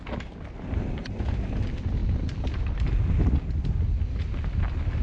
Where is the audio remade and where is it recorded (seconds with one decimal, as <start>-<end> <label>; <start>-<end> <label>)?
0.0-5.0 recorded